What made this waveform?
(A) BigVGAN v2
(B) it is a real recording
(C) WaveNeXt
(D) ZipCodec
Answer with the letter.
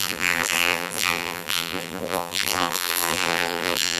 A